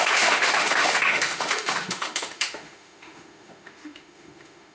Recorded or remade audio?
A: remade